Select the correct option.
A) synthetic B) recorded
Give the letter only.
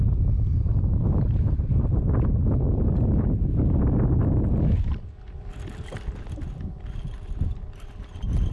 B